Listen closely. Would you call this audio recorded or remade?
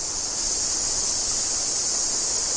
recorded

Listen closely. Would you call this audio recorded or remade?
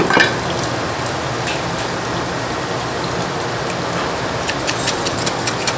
recorded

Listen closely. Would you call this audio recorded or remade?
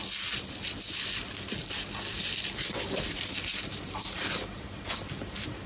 remade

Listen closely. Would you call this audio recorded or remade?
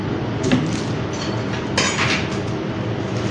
recorded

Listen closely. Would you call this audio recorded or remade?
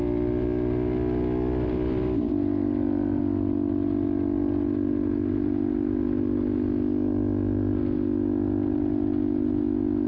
recorded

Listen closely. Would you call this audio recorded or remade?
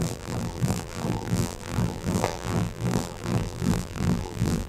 remade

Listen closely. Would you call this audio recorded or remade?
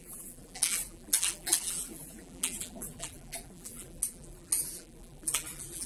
remade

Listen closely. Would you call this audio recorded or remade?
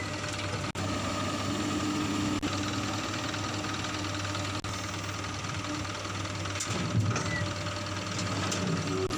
recorded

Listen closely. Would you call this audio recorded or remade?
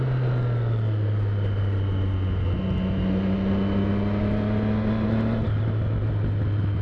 recorded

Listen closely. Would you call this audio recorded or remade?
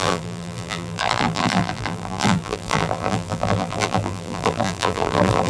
remade